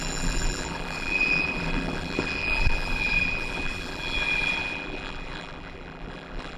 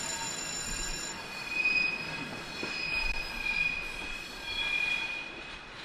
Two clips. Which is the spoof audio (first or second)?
first